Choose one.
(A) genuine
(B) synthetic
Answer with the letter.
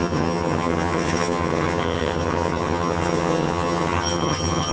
B